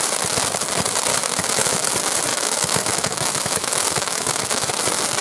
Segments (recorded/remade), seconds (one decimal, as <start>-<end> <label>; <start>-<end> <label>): 0.0-1.1 recorded; 1.1-1.9 remade; 1.9-2.3 recorded; 2.3-4.7 remade; 4.7-5.2 recorded